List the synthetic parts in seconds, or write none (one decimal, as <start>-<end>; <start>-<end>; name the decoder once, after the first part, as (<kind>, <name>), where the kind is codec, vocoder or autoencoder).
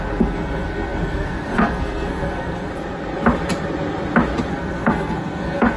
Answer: 0.0-2.7 (codec, SNAC); 4.5-5.8